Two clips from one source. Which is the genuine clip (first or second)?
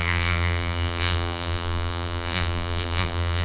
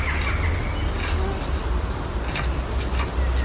second